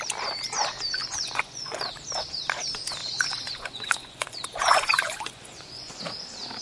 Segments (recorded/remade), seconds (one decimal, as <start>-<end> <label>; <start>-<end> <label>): 0.0-1.0 recorded; 1.0-1.9 remade; 1.9-3.0 recorded; 3.0-6.0 remade; 6.0-6.6 recorded